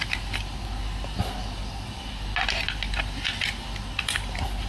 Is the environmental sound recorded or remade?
recorded